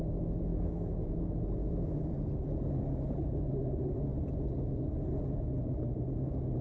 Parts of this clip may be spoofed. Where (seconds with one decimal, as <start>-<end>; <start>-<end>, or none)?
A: 0.5-1.2; 1.6-2.1